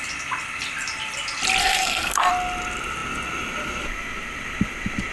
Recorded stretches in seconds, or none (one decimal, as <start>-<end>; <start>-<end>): 0.0-1.6; 2.3-5.1